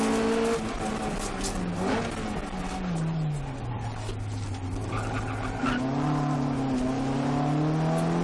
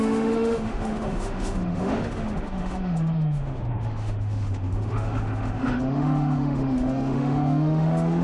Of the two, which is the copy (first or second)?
second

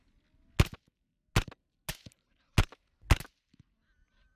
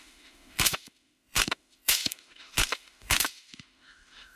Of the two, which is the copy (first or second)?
second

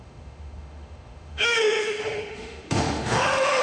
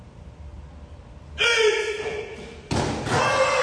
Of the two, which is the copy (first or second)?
first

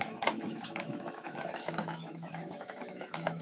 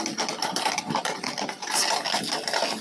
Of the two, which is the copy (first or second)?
first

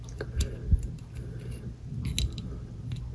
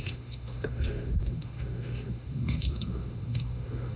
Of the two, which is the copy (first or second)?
second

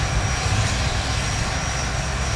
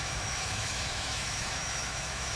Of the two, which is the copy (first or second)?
second